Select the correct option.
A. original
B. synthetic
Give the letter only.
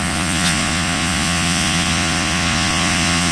B